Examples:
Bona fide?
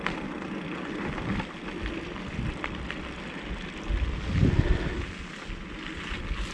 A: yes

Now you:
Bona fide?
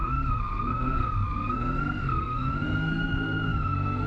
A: no